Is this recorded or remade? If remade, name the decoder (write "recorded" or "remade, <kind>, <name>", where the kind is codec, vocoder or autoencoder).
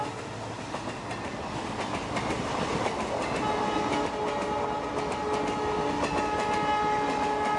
recorded